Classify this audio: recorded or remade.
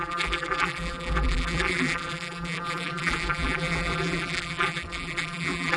remade